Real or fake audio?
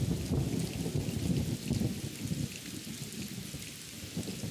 real